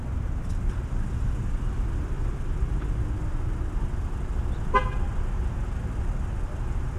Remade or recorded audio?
recorded